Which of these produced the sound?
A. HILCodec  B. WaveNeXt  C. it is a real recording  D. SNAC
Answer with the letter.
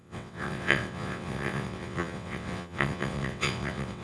B